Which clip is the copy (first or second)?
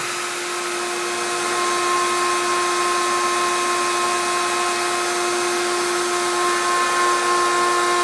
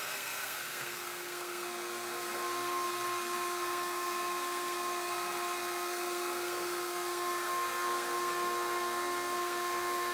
second